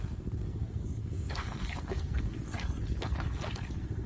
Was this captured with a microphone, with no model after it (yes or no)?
no